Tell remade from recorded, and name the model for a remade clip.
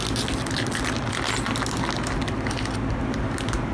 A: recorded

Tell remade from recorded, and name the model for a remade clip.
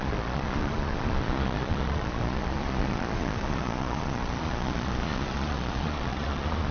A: remade, vocoder, Vocos